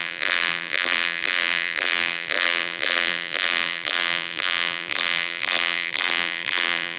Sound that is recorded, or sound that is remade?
remade